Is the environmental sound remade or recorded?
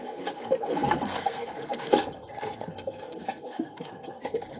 remade